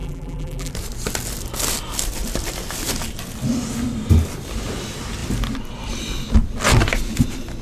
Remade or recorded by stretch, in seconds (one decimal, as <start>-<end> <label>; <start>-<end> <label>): 0.0-0.7 remade; 0.7-7.6 recorded